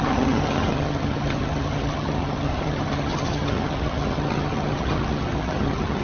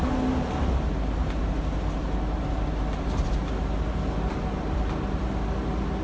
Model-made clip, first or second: first